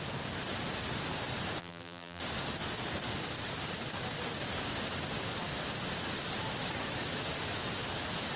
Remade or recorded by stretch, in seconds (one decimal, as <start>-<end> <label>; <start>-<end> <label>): 0.0-1.6 recorded; 1.6-2.2 remade; 2.2-8.4 recorded